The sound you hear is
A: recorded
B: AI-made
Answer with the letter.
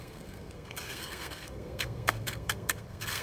B